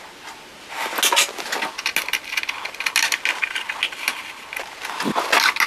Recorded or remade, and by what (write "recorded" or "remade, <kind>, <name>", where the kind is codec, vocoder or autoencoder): recorded